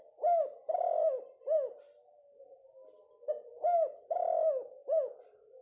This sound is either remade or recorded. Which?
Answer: recorded